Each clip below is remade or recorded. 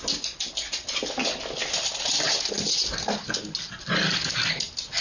recorded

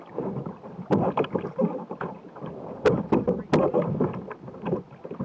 recorded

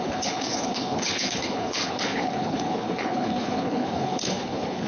remade